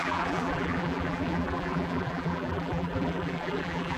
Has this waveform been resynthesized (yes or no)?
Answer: yes